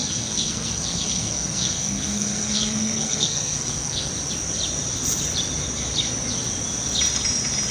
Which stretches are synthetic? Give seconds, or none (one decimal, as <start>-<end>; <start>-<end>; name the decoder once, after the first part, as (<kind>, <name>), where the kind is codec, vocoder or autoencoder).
0.0-4.1 (codec, SNAC)